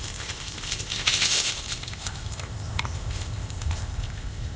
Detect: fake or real fake